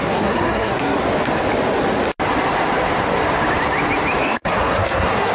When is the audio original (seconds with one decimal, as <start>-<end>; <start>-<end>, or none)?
1.0-4.2